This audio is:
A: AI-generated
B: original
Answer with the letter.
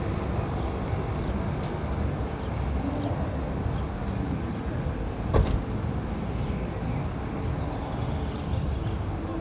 B